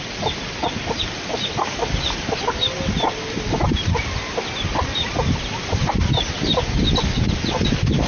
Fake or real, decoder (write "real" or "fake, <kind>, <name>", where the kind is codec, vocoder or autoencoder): real